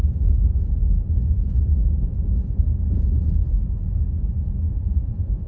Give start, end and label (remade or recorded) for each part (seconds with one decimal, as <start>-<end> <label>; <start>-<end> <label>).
0.0-4.7 recorded; 4.7-5.5 remade